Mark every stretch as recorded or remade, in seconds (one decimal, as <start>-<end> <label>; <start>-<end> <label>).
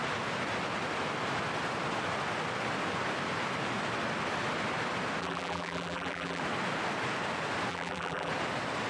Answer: 0.0-5.2 recorded; 5.2-6.4 remade; 6.4-7.7 recorded; 7.7-8.3 remade; 8.3-8.9 recorded